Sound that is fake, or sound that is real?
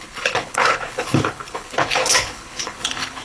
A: fake